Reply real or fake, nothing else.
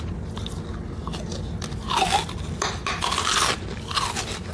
real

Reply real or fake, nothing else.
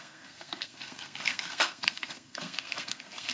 fake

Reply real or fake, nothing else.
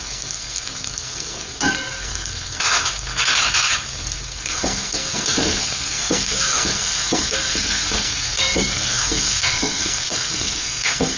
fake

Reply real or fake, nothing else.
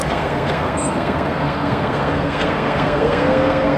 fake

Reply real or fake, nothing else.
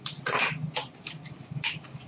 real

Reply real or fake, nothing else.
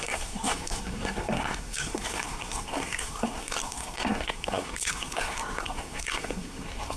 fake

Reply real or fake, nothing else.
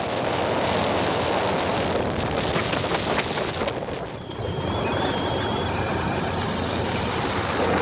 real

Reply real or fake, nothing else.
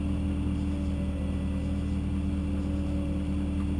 real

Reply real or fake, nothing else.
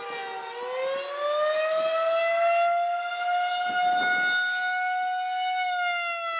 real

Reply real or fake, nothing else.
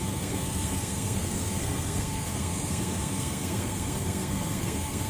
fake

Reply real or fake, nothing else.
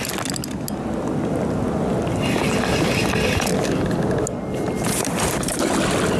real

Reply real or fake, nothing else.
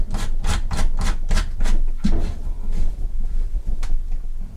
real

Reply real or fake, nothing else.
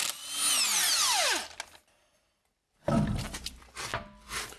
real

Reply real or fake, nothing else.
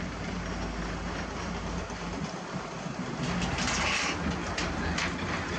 real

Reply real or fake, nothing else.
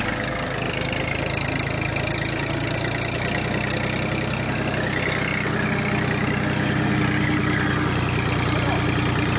real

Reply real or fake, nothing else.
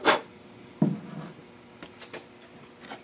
real